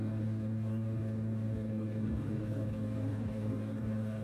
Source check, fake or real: fake